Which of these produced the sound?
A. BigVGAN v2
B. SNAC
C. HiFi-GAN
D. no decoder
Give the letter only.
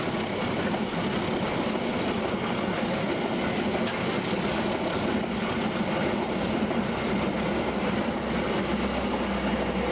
D